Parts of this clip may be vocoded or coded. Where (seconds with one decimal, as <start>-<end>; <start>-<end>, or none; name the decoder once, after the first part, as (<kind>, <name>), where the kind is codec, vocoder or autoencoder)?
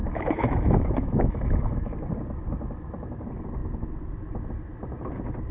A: 0.0-1.9 (autoencoder, DAC-VAE)